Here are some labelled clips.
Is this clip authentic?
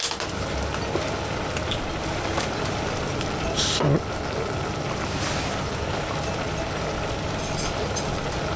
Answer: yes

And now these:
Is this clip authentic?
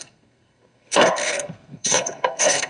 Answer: no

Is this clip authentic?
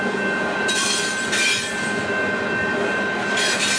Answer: yes